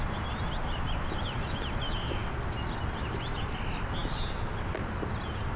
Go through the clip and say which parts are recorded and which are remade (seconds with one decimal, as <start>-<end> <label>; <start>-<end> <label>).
0.0-5.6 recorded